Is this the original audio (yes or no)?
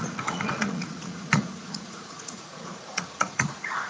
no